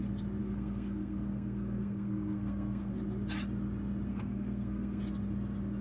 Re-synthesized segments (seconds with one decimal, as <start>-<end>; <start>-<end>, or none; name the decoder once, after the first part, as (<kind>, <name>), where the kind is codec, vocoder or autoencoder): 0.4-2.9 (codec, SNAC); 4.1-5.0

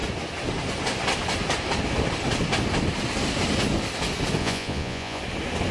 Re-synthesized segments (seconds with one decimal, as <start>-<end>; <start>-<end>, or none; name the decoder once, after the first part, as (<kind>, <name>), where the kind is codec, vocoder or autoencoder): 4.4-5.2 (vocoder, Vocos)